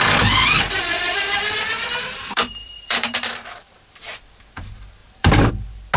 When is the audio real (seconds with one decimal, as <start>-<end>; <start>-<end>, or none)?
0.0-0.4; 3.7-5.0; 5.5-6.0